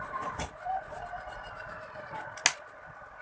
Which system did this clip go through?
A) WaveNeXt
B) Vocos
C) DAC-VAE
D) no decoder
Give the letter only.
D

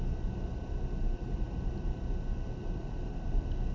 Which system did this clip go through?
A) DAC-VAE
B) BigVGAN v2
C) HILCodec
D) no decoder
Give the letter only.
D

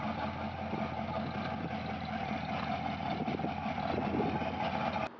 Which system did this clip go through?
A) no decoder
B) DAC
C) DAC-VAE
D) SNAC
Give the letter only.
A